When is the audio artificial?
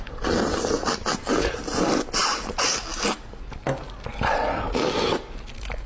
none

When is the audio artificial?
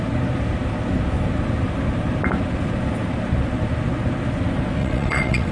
4.8-5.5 (vocoder, WaveNeXt)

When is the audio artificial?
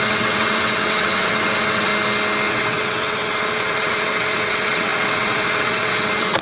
0.0-1.9 (vocoder, WaveNeXt); 2.5-6.4